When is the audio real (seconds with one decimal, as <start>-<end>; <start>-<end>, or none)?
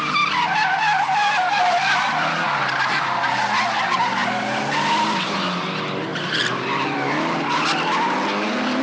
0.0-8.8